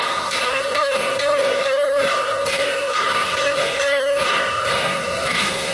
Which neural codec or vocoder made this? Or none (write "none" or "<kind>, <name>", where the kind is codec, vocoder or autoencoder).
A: codec, SNAC